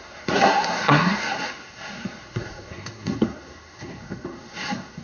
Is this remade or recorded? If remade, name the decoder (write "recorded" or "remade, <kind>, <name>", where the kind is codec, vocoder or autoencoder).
remade, codec, SNAC